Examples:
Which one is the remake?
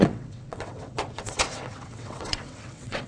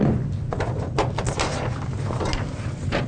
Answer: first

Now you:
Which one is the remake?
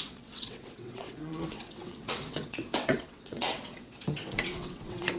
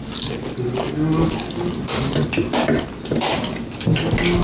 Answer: first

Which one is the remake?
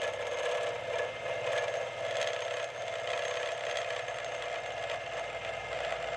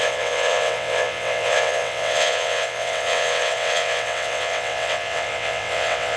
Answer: second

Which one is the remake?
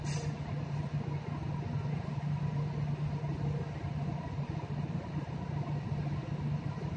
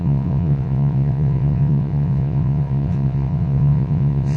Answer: second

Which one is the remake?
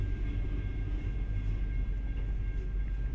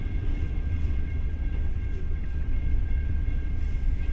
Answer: second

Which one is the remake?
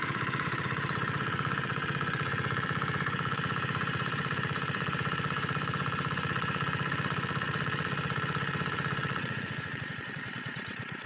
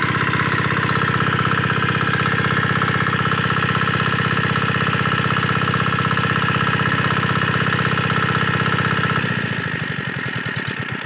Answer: first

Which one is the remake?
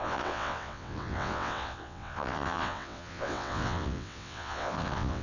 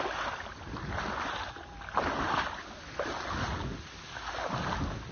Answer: first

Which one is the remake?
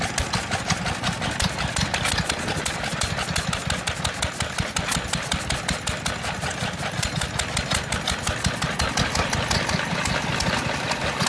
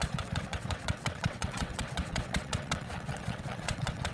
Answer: second